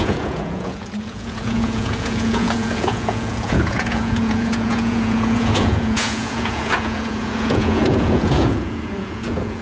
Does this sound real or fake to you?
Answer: fake